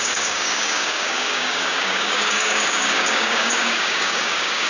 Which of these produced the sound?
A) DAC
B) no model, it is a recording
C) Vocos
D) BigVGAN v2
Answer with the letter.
A